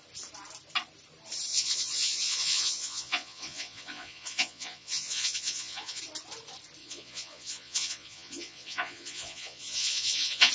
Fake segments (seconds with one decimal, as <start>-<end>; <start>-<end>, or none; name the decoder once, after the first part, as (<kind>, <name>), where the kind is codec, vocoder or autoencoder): 1.5-6.0 (vocoder, Vocos); 6.8-10.5